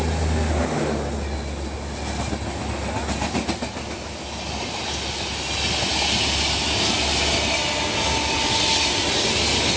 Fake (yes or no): no